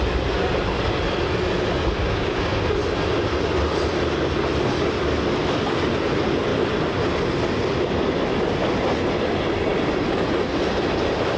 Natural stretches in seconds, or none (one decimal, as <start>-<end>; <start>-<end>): 0.0-2.0; 2.6-11.4